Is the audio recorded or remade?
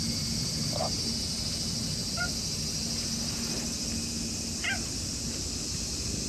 recorded